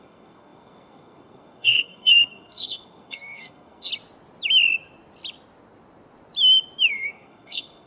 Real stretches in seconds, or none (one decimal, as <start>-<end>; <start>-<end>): 3.9-6.9